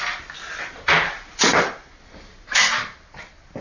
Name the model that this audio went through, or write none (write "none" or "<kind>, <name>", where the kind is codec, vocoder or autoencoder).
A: none